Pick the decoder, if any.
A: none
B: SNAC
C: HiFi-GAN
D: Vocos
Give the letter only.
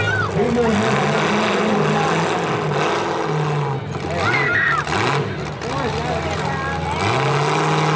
A